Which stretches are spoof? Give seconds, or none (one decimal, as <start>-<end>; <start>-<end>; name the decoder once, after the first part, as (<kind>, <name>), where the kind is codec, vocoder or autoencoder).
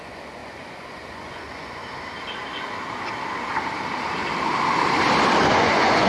0.0-1.8 (vocoder, Vocos); 5.5-6.1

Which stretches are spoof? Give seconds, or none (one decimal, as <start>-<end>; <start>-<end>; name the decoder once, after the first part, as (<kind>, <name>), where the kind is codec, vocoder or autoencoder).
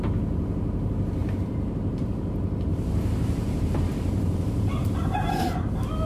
1.2-2.1 (vocoder, BigVGAN v2); 2.7-5.4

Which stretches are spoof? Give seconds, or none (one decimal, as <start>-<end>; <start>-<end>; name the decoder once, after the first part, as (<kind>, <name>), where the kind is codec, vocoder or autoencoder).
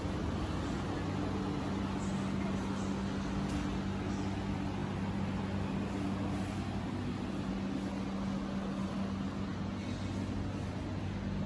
none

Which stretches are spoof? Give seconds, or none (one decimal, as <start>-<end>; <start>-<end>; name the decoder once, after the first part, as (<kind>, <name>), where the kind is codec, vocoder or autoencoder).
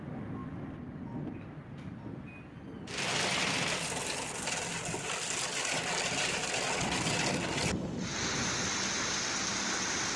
none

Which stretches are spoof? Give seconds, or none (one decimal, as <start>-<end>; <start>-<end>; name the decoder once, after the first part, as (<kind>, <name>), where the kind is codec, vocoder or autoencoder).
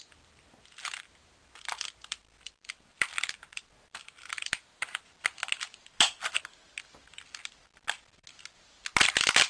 none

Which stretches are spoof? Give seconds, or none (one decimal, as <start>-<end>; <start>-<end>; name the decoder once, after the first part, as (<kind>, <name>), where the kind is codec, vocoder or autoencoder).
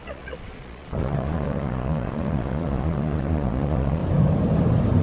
0.0-4.0 (vocoder, Vocos)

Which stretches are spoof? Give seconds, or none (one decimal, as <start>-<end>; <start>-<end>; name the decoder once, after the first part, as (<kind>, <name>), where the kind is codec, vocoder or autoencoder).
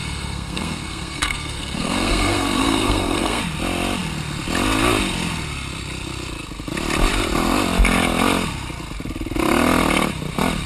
0.0-3.4 (codec, SNAC)